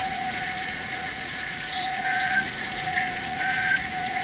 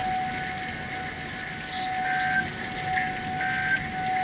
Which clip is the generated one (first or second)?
first